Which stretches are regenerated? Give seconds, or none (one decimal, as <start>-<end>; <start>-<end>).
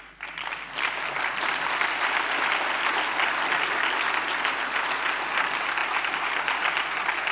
none